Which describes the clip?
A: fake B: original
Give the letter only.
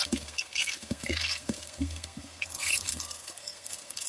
A